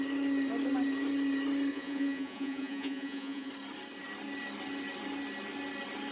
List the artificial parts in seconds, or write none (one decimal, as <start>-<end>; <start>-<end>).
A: 1.7-3.5